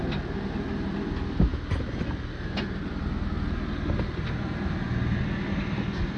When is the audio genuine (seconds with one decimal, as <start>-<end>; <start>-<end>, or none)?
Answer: 0.0-6.2